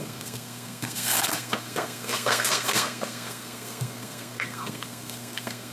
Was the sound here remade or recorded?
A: remade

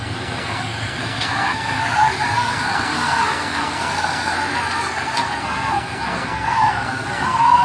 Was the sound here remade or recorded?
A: remade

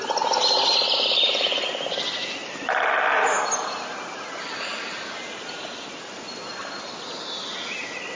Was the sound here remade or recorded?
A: recorded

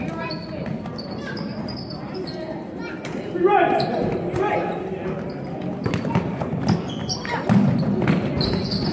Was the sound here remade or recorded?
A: recorded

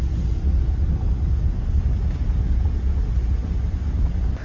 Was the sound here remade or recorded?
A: recorded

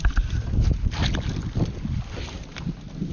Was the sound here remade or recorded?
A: recorded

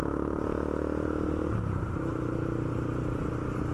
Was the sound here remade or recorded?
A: recorded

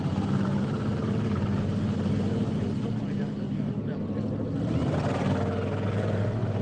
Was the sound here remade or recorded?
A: recorded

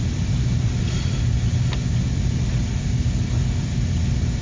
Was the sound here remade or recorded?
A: recorded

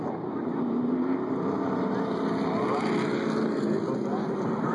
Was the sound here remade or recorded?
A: recorded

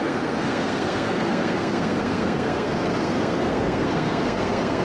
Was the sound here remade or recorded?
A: remade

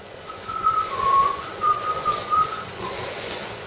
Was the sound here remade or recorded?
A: remade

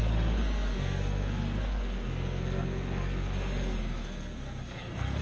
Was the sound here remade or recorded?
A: remade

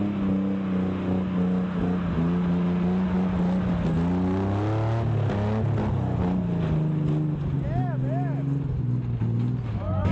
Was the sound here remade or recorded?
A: recorded